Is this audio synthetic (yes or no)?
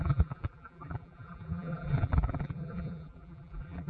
yes